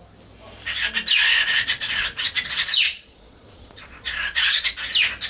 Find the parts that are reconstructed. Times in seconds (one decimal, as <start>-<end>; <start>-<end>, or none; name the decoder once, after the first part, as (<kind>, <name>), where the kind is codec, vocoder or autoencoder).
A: 1.5-4.7 (vocoder, Vocos)